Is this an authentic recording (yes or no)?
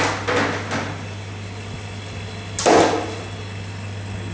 yes